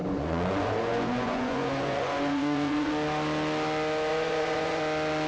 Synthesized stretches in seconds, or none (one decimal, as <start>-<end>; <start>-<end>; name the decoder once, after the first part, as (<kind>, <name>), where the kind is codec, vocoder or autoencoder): 0.0-2.9 (vocoder, Vocos); 4.1-4.8